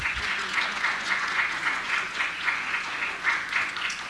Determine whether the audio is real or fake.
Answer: fake